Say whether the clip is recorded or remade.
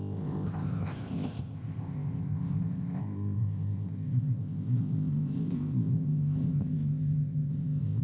remade